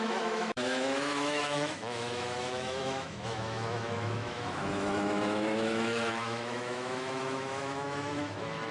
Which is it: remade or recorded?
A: remade